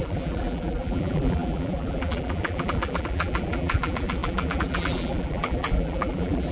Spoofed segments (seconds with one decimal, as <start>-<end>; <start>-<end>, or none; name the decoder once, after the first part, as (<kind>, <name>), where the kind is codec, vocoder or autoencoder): 0.0-6.5 (vocoder, BigVGAN v2)